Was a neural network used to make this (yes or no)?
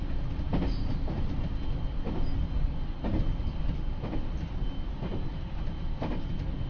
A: no